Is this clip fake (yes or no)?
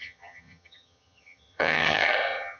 yes